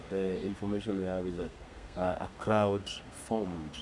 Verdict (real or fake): fake